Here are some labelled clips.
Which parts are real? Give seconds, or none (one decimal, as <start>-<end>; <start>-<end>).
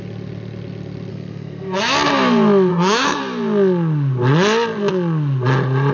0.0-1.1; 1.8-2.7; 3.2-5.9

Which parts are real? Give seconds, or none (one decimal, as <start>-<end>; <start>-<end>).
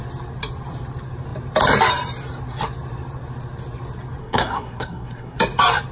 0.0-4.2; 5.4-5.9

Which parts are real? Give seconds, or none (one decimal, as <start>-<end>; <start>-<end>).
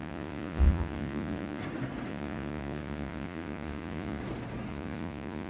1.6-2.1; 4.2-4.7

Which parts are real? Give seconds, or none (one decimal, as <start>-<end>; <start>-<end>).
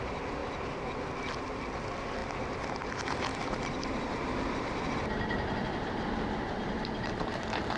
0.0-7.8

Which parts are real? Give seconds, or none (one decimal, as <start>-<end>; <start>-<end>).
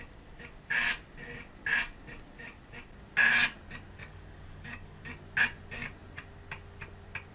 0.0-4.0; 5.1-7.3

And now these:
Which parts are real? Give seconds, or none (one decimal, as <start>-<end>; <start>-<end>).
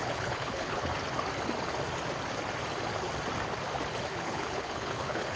0.9-4.1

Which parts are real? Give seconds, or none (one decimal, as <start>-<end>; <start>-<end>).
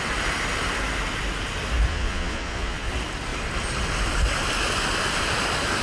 0.0-1.9; 2.9-5.8